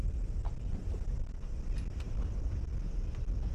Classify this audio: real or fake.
real